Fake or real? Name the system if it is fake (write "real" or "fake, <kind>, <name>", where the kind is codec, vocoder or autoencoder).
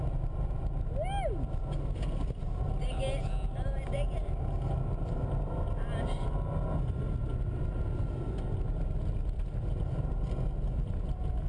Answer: real